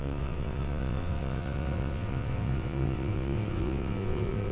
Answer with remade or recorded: remade